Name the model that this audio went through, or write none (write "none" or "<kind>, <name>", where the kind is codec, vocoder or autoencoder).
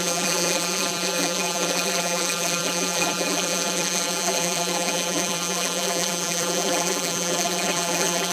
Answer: vocoder, BigVGAN v2